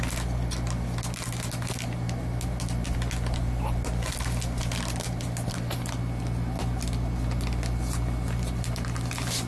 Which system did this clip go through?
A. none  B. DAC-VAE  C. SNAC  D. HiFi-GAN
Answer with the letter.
A